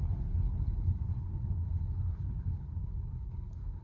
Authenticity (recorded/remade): remade